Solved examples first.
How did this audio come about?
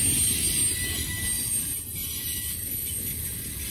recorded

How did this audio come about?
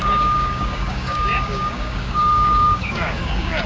remade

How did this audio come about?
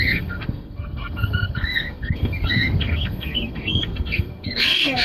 remade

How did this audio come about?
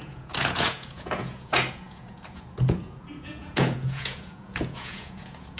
remade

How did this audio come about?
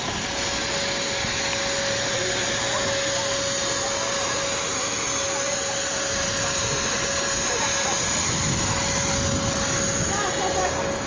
recorded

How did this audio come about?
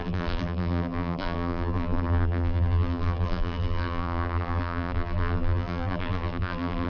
remade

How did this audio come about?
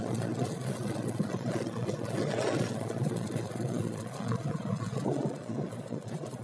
remade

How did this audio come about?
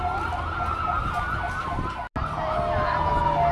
recorded